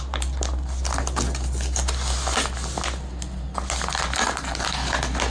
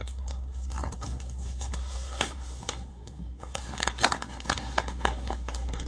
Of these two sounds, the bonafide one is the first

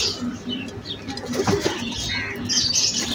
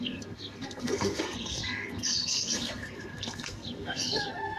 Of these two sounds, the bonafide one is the first